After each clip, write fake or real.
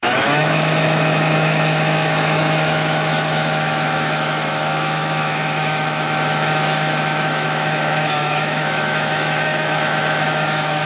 fake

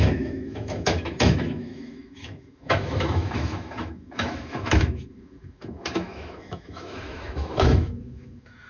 fake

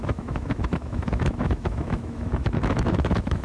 fake